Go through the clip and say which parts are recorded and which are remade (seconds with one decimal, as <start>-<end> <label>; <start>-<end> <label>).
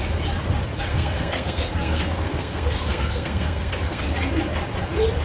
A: 0.0-0.9 recorded; 0.9-4.0 remade; 4.0-5.2 recorded